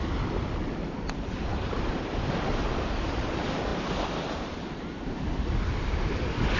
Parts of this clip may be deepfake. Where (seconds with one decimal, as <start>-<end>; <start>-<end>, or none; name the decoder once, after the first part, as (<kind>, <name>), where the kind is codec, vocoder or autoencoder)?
none